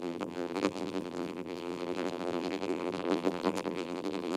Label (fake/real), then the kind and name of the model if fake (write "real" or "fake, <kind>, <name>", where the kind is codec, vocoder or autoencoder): fake, vocoder, BigVGAN v2